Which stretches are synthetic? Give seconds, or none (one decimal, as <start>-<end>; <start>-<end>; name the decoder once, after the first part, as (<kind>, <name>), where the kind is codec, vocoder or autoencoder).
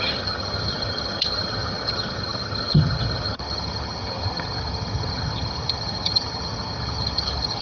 0.0-7.6 (vocoder, HiFi-GAN)